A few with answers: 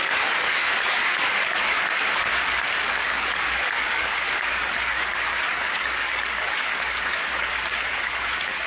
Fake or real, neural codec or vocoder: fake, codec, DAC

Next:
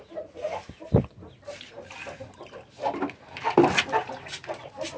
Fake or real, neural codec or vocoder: real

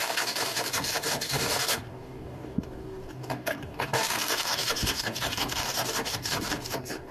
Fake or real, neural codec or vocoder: fake, codec, DAC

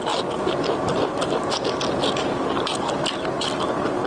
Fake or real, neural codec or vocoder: real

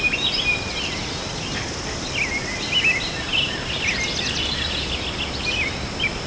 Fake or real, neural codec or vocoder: real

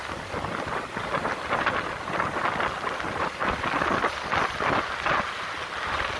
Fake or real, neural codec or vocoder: real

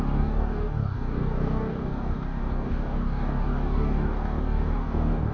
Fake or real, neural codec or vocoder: fake, codec, DAC